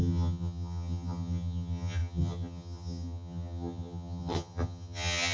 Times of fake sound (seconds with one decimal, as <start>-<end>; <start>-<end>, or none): 0.0-5.3